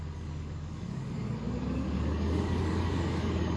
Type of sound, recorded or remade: remade